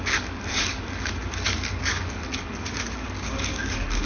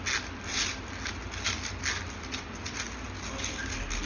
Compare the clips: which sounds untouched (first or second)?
second